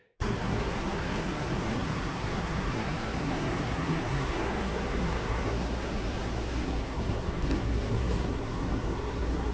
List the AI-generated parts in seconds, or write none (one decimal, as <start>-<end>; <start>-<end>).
0.0-9.5